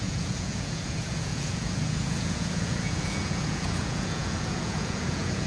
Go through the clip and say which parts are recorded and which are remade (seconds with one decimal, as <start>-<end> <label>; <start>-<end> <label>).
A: 0.0-5.5 remade